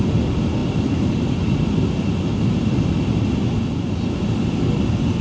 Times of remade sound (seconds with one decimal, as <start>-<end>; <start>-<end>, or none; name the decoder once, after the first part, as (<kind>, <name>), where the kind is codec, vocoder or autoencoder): none